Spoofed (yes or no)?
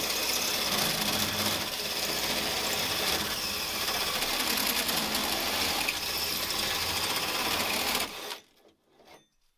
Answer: no